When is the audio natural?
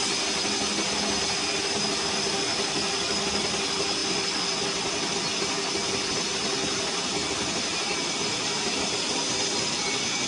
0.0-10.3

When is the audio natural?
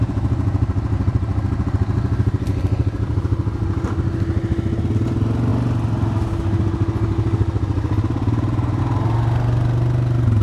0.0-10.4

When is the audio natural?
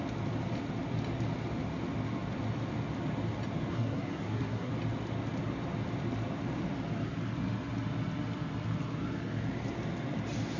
0.0-3.7; 4.7-10.6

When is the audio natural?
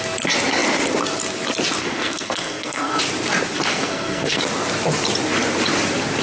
0.0-1.8; 3.0-3.7; 4.4-6.2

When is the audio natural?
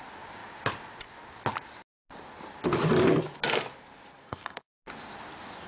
0.0-4.1; 4.7-5.7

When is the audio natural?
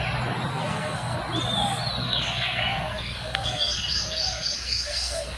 0.0-0.5; 1.2-2.0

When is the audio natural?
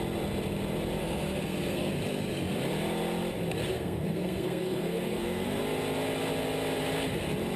0.0-1.0; 1.9-3.7; 5.6-7.6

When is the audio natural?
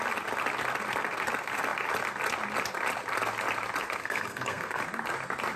0.0-4.0; 4.8-5.6